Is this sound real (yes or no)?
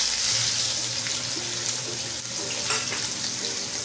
yes